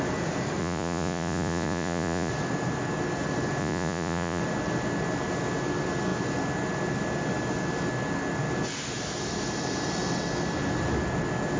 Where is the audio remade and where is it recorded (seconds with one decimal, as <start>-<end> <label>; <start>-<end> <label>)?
0.0-0.6 recorded; 0.6-2.3 remade; 2.3-3.6 recorded; 3.6-4.4 remade; 4.4-11.6 recorded